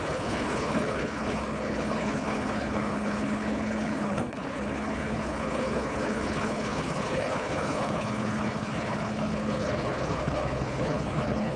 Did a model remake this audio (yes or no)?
yes